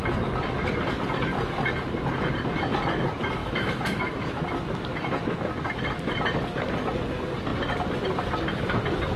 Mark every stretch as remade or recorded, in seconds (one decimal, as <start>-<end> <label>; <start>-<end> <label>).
0.0-3.4 recorded; 3.4-4.4 remade; 4.4-9.2 recorded